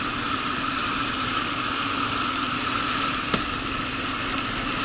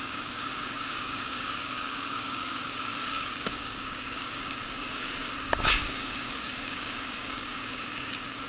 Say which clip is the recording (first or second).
first